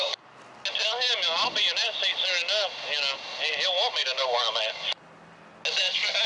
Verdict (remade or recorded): recorded